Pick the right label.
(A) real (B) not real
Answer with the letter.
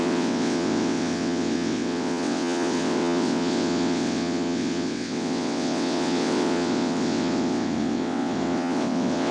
B